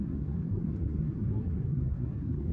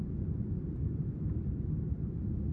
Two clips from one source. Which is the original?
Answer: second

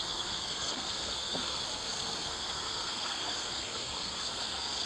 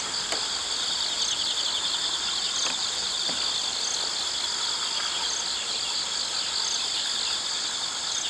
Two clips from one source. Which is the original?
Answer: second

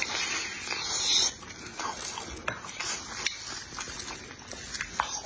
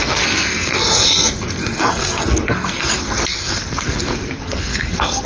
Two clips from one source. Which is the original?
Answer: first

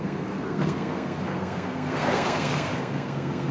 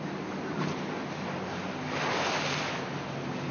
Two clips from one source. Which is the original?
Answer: second